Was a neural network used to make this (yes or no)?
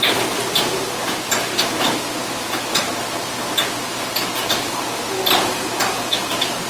no